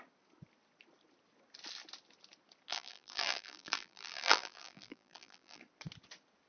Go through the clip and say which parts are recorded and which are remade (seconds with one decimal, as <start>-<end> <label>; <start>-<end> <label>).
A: 0.0-2.7 recorded; 2.7-5.6 remade; 5.6-6.5 recorded